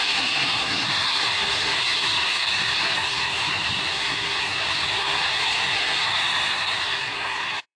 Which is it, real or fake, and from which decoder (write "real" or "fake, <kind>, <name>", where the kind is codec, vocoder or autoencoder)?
fake, codec, SNAC